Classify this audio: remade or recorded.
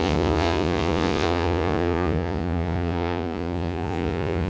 remade